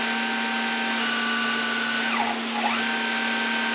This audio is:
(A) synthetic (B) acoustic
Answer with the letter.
B